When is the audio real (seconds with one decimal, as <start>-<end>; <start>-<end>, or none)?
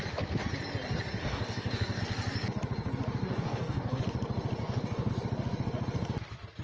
0.0-1.2; 2.0-3.3; 4.0-4.6; 5.1-6.6